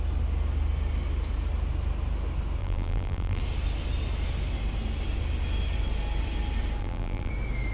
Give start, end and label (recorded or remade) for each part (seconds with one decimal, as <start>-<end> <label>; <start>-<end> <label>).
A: 0.0-2.6 recorded; 2.6-3.4 remade; 3.4-6.8 recorded; 6.8-7.3 remade; 7.3-7.7 recorded